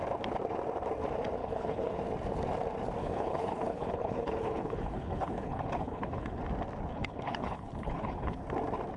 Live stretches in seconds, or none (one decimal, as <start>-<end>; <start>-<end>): 0.0-1.4; 2.0-3.0; 6.4-6.9; 8.4-9.0